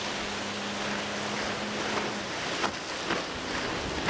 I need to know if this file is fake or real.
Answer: real